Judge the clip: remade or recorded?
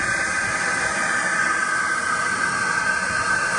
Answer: recorded